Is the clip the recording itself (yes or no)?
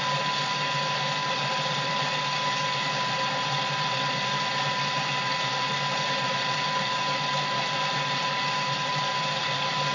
yes